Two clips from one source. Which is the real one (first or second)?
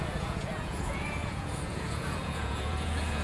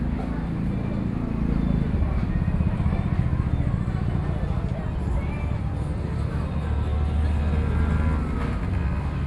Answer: second